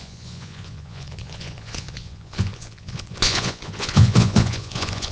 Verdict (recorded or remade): remade